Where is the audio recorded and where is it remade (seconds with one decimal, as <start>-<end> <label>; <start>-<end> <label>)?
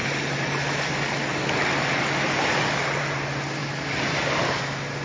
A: 0.0-5.0 recorded